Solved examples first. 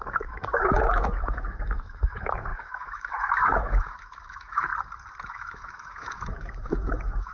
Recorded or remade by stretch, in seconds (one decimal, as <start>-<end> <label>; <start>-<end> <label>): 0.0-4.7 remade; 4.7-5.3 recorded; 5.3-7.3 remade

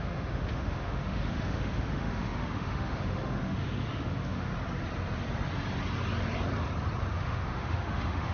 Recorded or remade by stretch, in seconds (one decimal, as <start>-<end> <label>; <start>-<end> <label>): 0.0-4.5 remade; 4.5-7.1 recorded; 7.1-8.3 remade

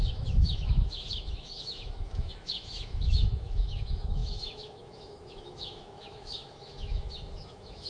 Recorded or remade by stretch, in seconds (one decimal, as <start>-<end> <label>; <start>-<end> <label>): 0.0-7.9 remade